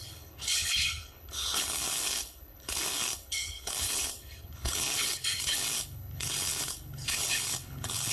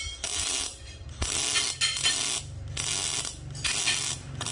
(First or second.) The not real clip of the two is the first